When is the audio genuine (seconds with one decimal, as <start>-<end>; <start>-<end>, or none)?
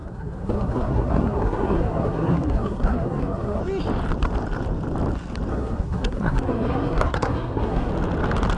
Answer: 3.6-5.5; 7.9-8.6